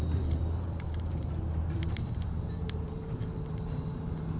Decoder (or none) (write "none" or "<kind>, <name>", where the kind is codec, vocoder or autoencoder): vocoder, BigVGAN v2